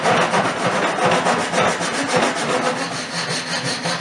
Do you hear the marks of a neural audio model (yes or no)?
no